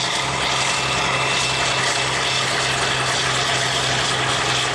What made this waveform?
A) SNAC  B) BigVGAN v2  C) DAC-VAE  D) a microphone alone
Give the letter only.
D